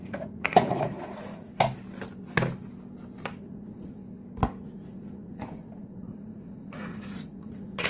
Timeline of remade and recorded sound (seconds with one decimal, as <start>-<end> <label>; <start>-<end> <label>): 0.0-1.5 remade; 1.5-3.4 recorded; 3.4-4.0 remade; 4.0-4.6 recorded; 4.6-7.9 remade

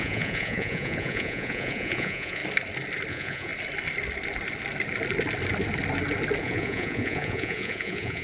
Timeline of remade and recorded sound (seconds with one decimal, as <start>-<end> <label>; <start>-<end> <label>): 0.0-2.4 remade; 2.4-3.1 recorded; 3.1-3.5 remade; 3.5-6.4 recorded; 6.4-8.2 remade

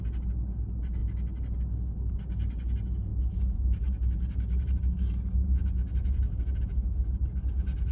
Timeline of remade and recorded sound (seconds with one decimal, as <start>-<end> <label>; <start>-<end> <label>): 0.0-7.9 recorded

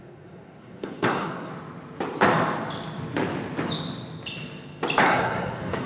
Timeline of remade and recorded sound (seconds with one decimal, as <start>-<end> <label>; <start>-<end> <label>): 0.0-1.5 remade; 1.5-5.0 recorded; 5.0-5.9 remade